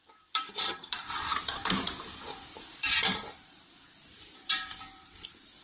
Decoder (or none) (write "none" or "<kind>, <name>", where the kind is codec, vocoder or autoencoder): vocoder, BigVGAN v2